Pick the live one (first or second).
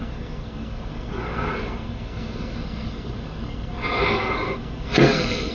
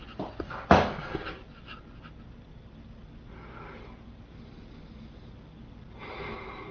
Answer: second